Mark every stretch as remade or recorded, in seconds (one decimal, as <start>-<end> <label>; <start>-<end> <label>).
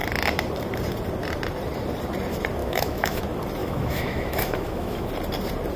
0.0-2.6 recorded; 2.6-3.2 remade; 3.2-3.6 recorded; 3.6-5.1 remade; 5.1-5.8 recorded